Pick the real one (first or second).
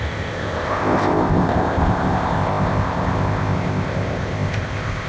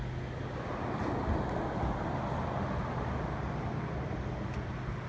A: second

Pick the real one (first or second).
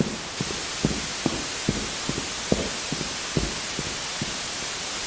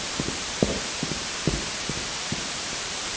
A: first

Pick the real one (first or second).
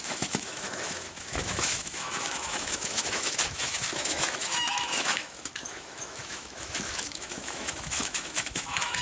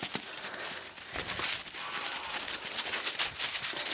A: second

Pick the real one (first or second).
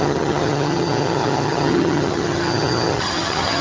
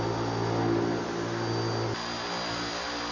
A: second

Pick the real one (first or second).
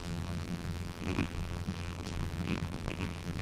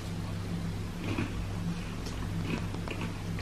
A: second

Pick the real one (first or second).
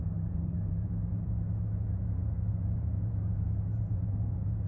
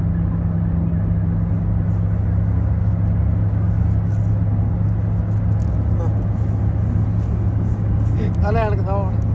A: second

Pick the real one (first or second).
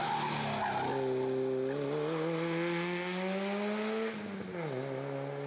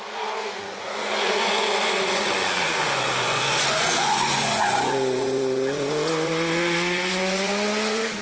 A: first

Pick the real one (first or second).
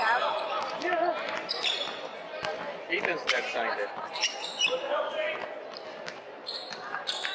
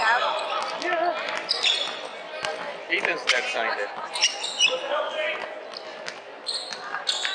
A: second